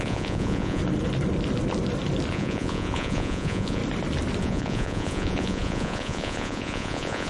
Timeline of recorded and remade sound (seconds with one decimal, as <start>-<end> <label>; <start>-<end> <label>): 0.0-0.8 remade; 0.8-2.3 recorded; 2.3-3.8 remade; 3.8-4.4 recorded; 4.4-7.3 remade